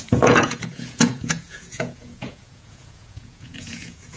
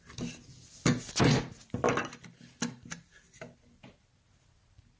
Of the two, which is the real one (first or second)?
second